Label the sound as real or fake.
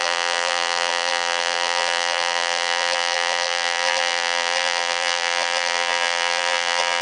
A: fake